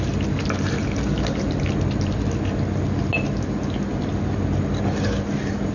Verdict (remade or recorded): recorded